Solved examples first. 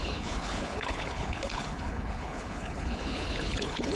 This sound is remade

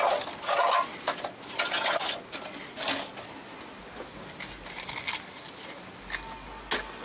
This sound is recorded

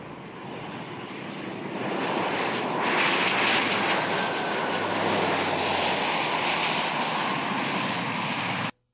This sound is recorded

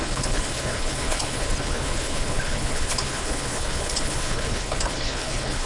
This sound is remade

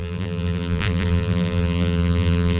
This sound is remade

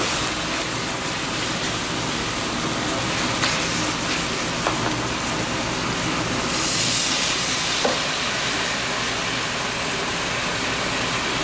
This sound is recorded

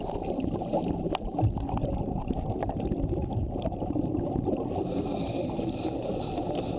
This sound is recorded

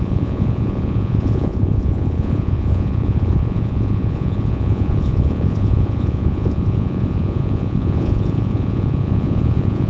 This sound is remade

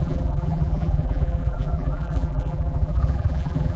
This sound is remade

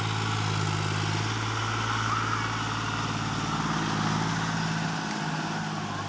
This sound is recorded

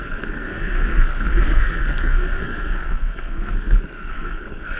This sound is remade